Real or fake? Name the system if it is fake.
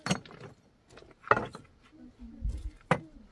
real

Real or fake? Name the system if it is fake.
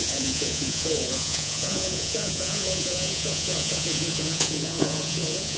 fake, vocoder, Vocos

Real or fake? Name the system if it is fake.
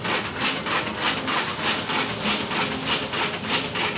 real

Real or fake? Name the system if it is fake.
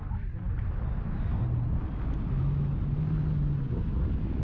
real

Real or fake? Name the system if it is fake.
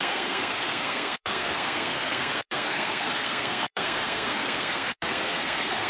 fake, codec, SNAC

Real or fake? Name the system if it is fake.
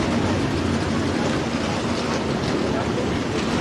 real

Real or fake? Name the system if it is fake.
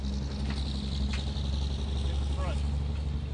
real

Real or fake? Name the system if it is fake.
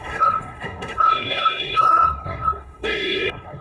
fake, codec, SNAC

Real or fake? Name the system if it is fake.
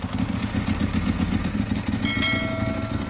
real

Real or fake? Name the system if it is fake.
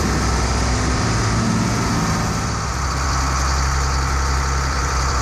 real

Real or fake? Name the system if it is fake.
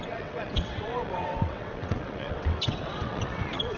fake, vocoder, WaveNeXt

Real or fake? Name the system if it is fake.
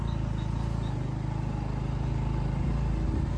real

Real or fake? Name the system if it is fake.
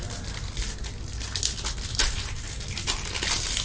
real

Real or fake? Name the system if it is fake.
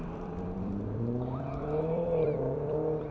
fake, vocoder, BigVGAN v2